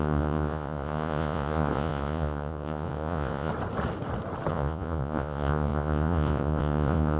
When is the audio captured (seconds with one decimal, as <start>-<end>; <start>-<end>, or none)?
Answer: 3.5-4.5